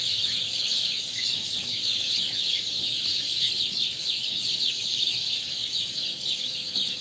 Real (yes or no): no